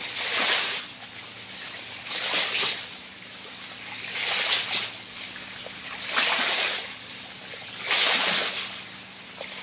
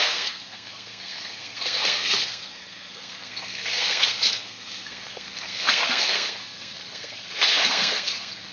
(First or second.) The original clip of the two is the first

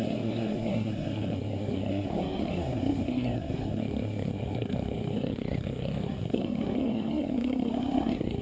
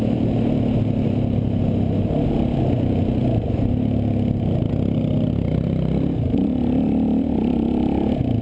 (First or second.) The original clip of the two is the second